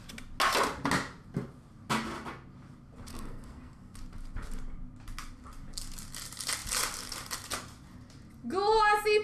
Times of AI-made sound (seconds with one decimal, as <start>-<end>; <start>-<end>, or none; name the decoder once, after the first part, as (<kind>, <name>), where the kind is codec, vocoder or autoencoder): 3.1-4.0 (codec, SNAC)